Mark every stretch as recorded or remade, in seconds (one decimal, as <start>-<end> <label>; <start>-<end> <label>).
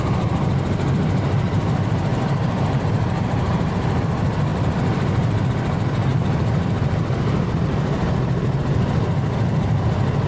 0.0-2.1 recorded; 2.1-4.0 remade; 4.0-6.1 recorded; 6.1-8.6 remade; 8.6-10.3 recorded